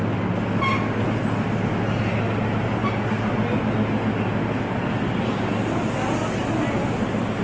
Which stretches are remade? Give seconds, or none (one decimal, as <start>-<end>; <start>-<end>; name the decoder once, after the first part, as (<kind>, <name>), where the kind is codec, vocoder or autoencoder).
none